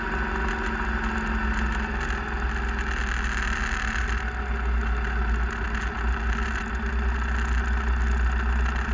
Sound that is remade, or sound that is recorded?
recorded